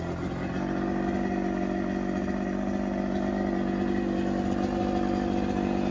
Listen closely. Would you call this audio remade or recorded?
recorded